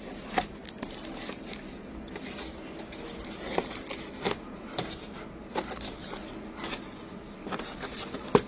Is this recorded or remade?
recorded